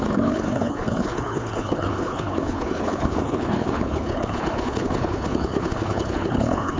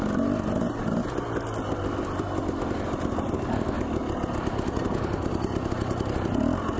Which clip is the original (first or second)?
second